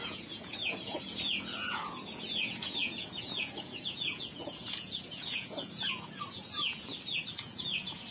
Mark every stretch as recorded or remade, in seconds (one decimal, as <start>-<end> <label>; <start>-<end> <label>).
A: 0.0-6.9 remade; 6.9-7.4 recorded; 7.4-8.1 remade